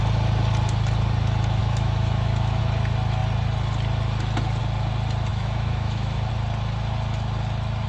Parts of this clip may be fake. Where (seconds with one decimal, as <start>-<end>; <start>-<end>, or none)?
1.6-2.6; 5.3-6.3